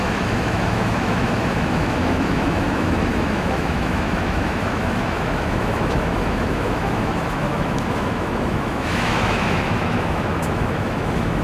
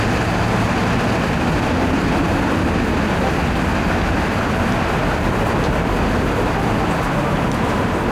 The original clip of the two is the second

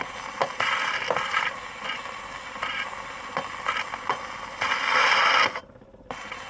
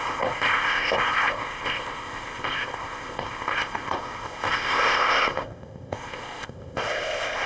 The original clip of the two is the first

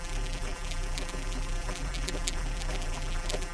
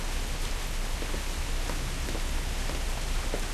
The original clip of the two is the second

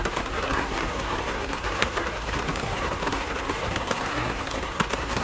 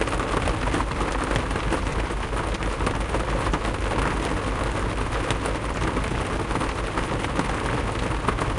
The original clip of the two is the second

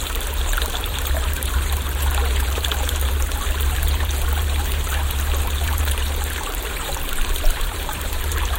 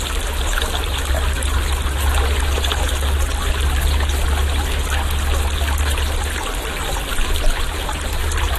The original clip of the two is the second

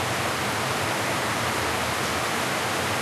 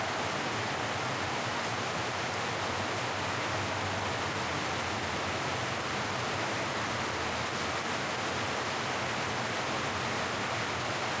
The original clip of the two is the second